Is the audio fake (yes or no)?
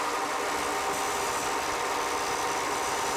no